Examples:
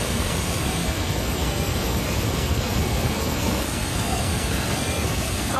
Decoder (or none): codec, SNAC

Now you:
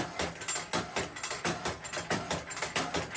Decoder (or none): none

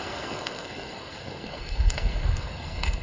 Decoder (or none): codec, SNAC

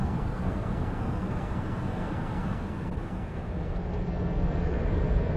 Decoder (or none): codec, SNAC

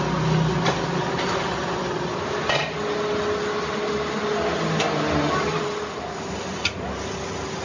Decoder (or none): none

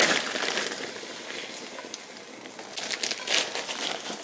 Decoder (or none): none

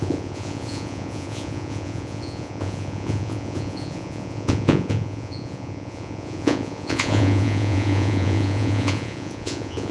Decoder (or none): vocoder, Vocos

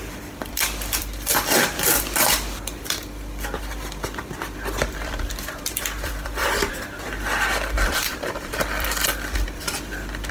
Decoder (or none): vocoder, BigVGAN v2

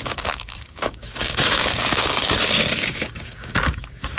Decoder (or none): codec, DAC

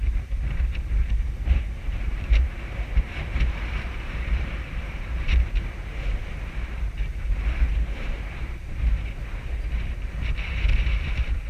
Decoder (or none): vocoder, BigVGAN v2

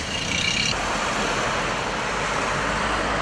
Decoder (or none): vocoder, BigVGAN v2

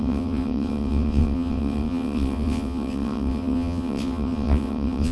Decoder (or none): vocoder, WaveNeXt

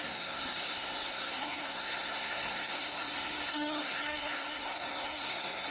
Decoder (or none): codec, SNAC